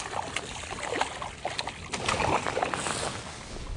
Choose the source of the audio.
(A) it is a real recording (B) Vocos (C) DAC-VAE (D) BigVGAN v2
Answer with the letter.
A